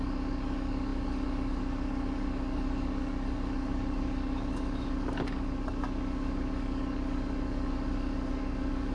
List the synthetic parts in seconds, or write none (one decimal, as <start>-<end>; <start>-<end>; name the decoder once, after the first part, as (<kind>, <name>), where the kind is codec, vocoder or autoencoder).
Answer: 0.0-8.9 (codec, DAC)